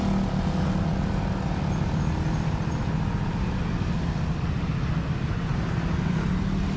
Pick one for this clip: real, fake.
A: real